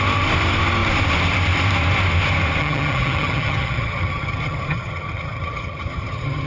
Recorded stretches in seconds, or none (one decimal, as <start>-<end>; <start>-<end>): 0.0-2.6